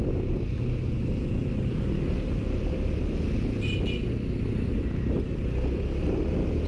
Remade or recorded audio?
recorded